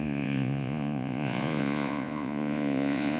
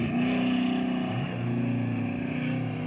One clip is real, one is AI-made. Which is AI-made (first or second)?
first